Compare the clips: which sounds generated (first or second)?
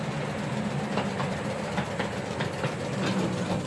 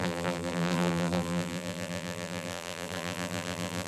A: second